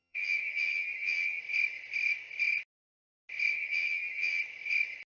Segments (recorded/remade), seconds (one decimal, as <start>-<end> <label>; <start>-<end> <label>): 0.0-1.4 remade; 1.4-3.5 recorded; 3.5-4.4 remade; 4.4-5.1 recorded